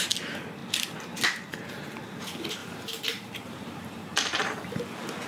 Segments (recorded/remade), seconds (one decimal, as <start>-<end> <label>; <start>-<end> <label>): 0.0-2.6 recorded; 2.6-5.3 remade